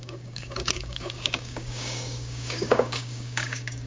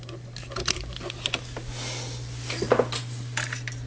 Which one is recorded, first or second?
second